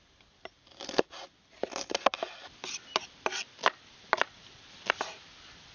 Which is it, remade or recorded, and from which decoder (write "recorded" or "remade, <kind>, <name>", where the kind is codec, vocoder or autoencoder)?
recorded